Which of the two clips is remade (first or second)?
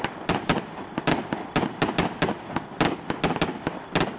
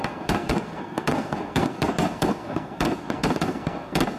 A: second